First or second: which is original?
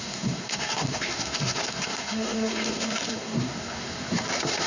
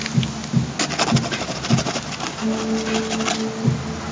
second